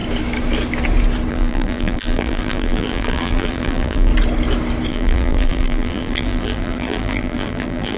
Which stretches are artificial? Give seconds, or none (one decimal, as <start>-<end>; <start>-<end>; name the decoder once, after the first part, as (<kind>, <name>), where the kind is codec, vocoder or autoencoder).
1.3-4.1 (vocoder, BigVGAN v2); 4.9-8.0